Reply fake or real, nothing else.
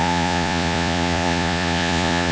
fake